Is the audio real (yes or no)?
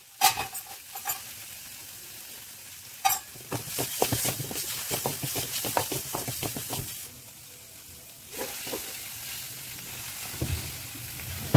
yes